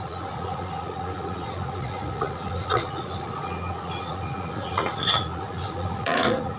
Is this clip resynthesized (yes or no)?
yes